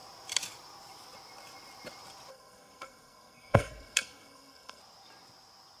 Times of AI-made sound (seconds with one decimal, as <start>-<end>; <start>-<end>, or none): 2.3-4.8